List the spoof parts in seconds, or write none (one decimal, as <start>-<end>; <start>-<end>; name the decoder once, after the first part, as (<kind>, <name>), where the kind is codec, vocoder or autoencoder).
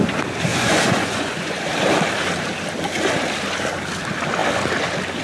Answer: 0.5-1.7 (vocoder, Vocos)